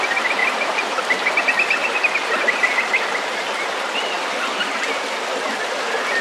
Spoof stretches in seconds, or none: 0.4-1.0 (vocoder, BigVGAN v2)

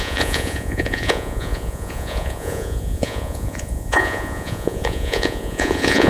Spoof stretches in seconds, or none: 0.0-6.1 (vocoder, Vocos)

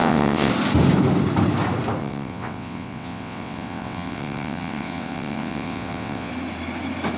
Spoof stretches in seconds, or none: 0.0-0.5 (vocoder, WaveNeXt); 2.0-6.3